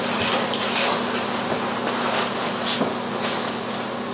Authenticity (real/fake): real